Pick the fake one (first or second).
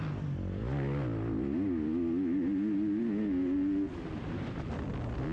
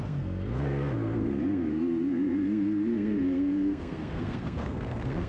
second